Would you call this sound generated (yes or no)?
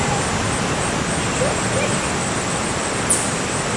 no